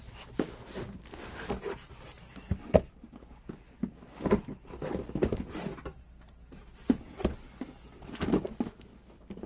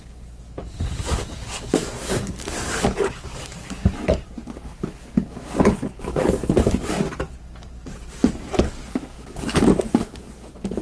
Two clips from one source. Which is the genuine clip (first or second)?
first